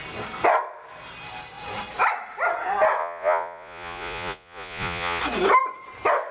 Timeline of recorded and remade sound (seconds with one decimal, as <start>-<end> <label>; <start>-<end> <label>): 0.0-3.0 recorded; 3.0-5.2 remade; 5.2-6.3 recorded